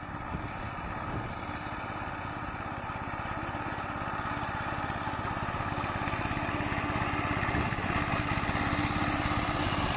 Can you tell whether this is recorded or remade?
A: recorded